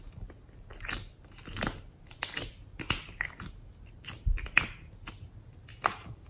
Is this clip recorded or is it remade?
recorded